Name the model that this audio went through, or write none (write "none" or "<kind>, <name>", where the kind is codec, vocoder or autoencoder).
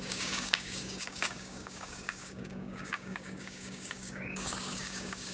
codec, DAC